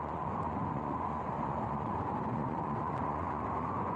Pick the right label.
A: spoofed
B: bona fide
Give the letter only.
A